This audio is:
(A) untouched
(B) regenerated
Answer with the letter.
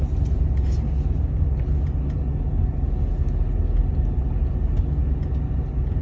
A